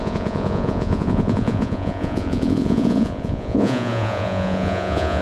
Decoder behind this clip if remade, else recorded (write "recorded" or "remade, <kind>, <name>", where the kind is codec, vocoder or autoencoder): remade, vocoder, Vocos